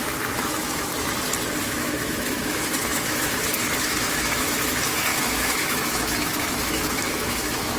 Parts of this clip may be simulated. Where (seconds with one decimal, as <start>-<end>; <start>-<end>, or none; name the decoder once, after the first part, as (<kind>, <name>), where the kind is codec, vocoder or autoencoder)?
0.0-0.9 (autoencoder, DAC-VAE); 1.6-7.8